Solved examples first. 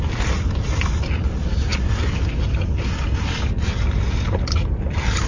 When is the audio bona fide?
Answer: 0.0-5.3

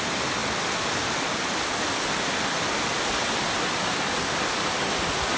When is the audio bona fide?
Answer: 0.0-5.4